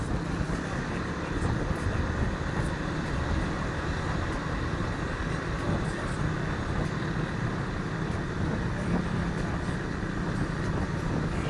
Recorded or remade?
recorded